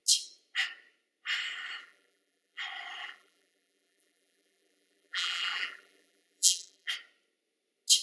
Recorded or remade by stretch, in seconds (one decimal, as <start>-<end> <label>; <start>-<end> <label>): 0.0-1.8 recorded; 1.8-2.6 remade; 2.6-3.0 recorded; 3.0-6.9 remade; 6.9-8.0 recorded